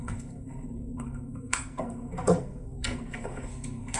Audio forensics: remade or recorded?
remade